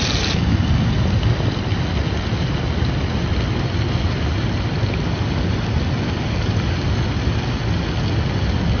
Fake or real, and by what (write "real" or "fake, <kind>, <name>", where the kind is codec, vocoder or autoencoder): real